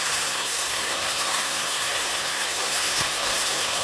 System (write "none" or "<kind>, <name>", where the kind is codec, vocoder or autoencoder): codec, SNAC